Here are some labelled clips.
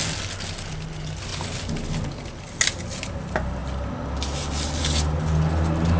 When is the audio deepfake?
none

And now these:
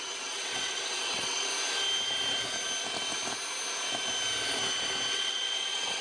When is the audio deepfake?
0.0-1.5 (vocoder, WaveNeXt); 5.1-6.0